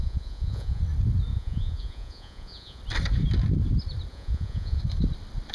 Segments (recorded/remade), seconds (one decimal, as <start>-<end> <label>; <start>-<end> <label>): 0.0-0.8 remade; 0.8-1.3 recorded; 1.3-2.8 remade; 2.8-4.1 recorded; 4.1-4.8 remade; 4.8-5.5 recorded

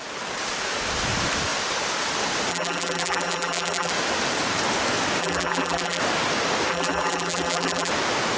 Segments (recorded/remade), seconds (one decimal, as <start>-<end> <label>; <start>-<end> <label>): 0.0-2.5 recorded; 2.5-3.9 remade; 3.9-5.2 recorded; 5.2-6.0 remade; 6.0-6.7 recorded; 6.7-7.9 remade; 7.9-8.4 recorded

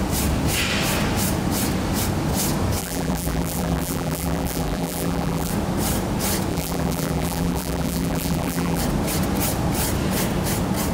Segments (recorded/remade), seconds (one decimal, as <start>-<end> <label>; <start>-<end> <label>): 0.0-2.8 recorded; 2.8-5.5 remade; 5.5-6.5 recorded; 6.5-8.8 remade; 8.8-10.9 recorded

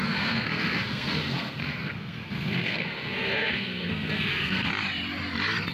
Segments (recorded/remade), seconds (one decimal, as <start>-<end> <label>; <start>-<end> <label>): 0.0-4.7 remade; 4.7-5.7 recorded